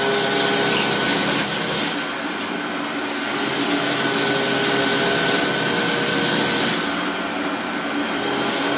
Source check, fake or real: real